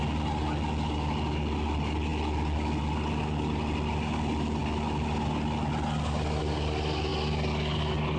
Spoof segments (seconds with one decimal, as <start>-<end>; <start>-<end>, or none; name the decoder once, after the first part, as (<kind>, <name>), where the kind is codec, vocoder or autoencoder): none